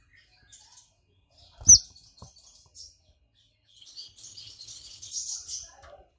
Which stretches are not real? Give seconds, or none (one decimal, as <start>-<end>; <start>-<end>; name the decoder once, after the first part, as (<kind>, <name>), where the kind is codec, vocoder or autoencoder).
3.8-5.1 (codec, HILCodec)